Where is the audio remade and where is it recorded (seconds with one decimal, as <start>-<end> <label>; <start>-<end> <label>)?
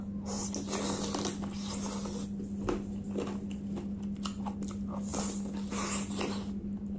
0.0-7.0 recorded